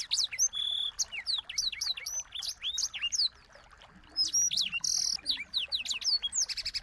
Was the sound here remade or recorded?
recorded